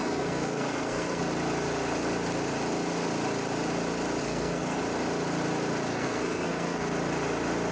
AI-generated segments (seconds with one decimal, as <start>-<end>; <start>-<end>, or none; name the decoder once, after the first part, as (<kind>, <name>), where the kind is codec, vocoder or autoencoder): 0.0-1.2 (codec, SNAC); 4.2-4.8; 5.9-6.9